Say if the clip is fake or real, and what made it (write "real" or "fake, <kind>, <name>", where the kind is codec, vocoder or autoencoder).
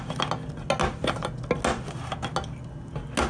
real